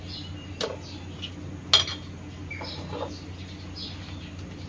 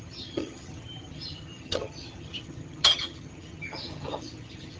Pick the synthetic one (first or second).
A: second